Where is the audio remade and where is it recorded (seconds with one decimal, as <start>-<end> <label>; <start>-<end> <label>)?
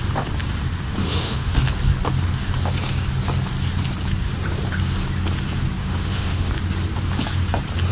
0.0-1.0 recorded; 1.0-1.6 remade; 1.6-5.8 recorded; 5.8-6.5 remade; 6.5-7.9 recorded